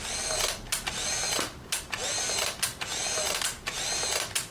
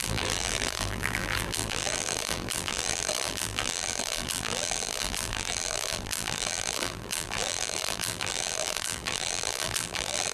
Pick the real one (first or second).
first